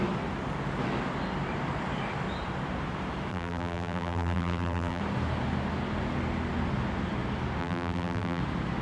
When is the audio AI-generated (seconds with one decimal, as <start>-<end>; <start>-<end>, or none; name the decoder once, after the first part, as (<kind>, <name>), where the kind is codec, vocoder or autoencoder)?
3.3-5.0 (vocoder, BigVGAN v2); 7.6-8.4